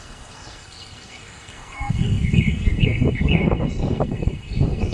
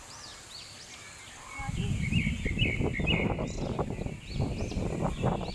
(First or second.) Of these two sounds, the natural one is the second